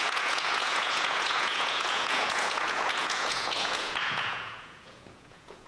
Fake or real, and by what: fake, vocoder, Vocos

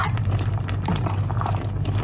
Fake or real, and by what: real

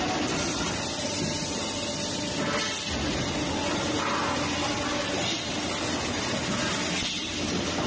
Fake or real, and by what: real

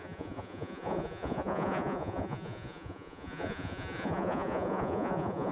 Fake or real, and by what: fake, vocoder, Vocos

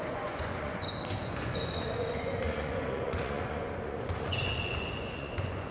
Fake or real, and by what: fake, vocoder, Vocos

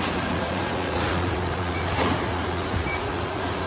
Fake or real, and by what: fake, vocoder, Vocos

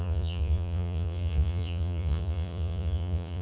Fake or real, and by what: fake, vocoder, Vocos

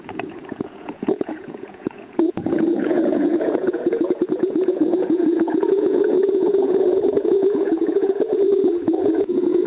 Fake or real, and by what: fake, vocoder, Vocos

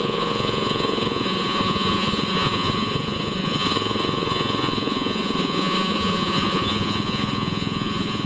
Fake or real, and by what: fake, vocoder, Vocos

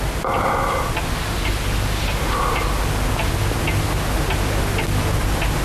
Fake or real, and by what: real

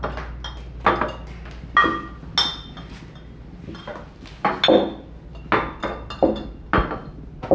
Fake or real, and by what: real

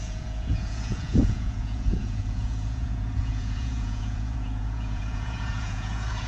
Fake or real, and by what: fake, vocoder, Vocos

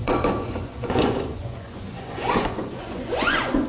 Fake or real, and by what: fake, vocoder, Vocos